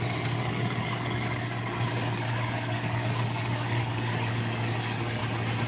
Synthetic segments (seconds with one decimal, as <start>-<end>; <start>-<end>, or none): 0.0-5.2